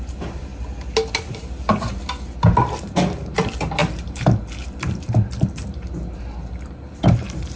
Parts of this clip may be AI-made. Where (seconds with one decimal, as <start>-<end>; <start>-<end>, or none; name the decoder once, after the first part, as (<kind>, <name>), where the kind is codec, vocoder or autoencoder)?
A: 0.0-0.5 (vocoder, BigVGAN v2); 1.3-1.9; 2.6-7.6